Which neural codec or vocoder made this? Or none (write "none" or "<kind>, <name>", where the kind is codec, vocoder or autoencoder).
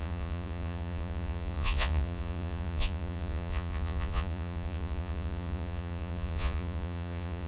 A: vocoder, Vocos